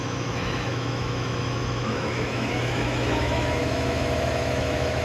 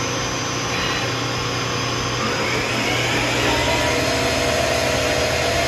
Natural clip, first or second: second